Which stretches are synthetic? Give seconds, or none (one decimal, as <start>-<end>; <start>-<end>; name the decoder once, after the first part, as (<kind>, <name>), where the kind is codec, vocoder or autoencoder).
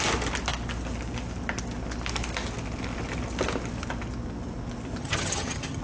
5.0-5.8 (vocoder, HiFi-GAN)